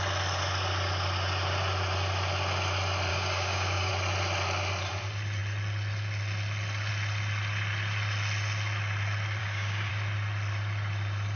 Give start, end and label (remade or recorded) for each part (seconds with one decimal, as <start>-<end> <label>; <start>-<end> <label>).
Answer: 0.0-3.1 recorded; 3.1-3.9 remade; 3.9-9.4 recorded; 9.4-9.9 remade; 9.9-11.4 recorded